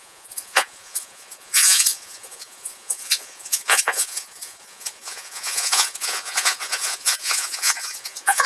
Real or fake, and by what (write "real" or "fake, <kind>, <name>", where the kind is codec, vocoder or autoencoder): fake, vocoder, Vocos